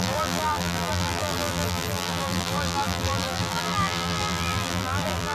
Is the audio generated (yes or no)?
yes